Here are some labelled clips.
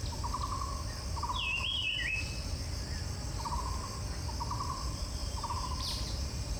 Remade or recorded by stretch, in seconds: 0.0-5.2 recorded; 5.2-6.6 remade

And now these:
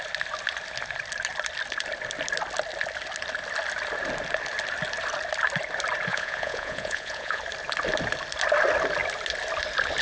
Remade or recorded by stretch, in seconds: 0.0-6.1 recorded; 6.1-7.4 remade; 7.4-10.0 recorded

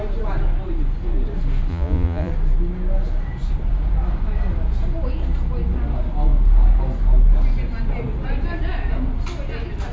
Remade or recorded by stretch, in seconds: 0.0-1.7 recorded; 1.7-2.3 remade; 2.3-9.9 recorded

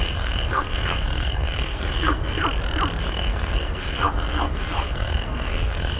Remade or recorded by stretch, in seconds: 0.0-2.4 remade; 2.4-3.0 recorded; 3.0-6.0 remade

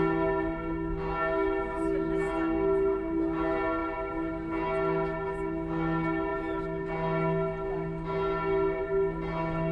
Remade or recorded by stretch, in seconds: 0.0-9.7 recorded

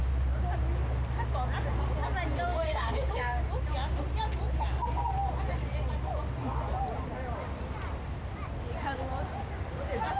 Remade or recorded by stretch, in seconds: 0.0-2.5 recorded; 2.5-3.4 remade; 3.4-10.2 recorded

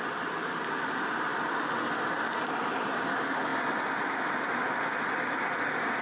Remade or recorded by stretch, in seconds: 0.0-6.0 recorded